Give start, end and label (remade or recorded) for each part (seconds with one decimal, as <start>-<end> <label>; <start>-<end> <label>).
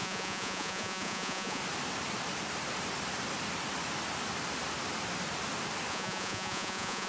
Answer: 0.0-1.6 remade; 1.6-5.9 recorded; 5.9-7.1 remade